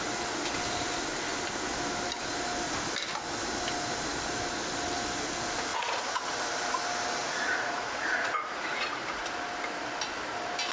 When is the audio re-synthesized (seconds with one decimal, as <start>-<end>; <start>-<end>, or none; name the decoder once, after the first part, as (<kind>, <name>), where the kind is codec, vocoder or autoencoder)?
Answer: 5.7-6.2 (vocoder, Vocos); 7.2-9.2